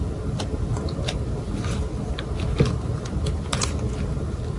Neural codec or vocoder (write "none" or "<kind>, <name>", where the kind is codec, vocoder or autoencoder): none